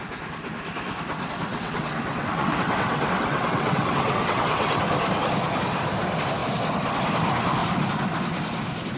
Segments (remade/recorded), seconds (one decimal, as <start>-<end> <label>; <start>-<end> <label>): 0.0-1.5 recorded; 1.5-4.8 remade; 4.8-9.0 recorded